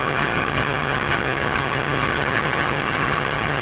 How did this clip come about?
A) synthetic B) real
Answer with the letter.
A